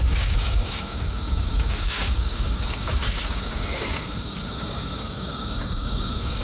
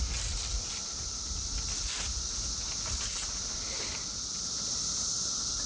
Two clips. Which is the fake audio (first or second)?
first